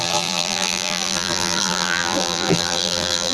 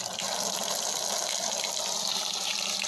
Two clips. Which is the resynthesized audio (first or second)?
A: first